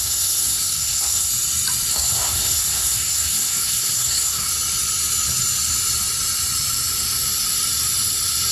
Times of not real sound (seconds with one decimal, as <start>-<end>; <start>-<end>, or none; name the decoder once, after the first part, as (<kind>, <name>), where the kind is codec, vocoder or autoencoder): 0.0-1.3 (codec, SNAC); 1.9-4.5